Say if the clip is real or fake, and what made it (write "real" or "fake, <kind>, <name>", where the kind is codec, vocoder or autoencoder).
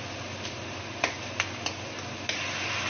real